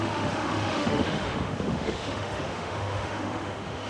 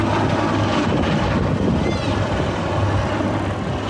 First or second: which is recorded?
second